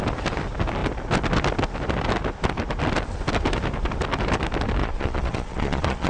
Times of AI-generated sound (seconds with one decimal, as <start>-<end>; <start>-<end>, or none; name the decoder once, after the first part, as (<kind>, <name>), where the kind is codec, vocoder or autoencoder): 4.8-6.1 (vocoder, Vocos)